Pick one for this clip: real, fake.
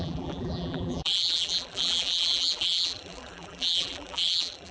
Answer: fake